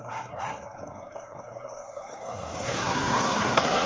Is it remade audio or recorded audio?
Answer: remade